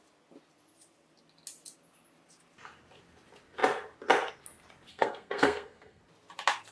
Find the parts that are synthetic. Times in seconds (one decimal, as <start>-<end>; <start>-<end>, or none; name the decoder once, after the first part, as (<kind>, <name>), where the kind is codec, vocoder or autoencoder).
4.9-6.0 (codec, SNAC)

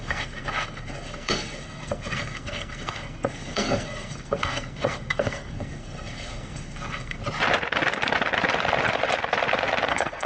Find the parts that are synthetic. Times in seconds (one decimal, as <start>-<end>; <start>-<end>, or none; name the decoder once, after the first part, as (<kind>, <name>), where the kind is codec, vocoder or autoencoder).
0.0-7.2 (codec, SNAC); 9.9-10.3